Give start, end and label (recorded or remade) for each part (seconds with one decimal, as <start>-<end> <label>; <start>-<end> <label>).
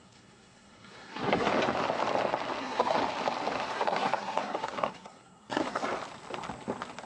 0.0-1.5 remade; 1.5-2.6 recorded; 2.6-3.0 remade; 3.0-3.7 recorded; 3.7-5.8 remade; 5.8-7.1 recorded